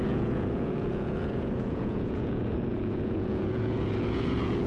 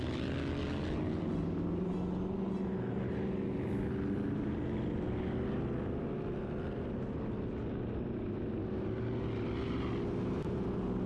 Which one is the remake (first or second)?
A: first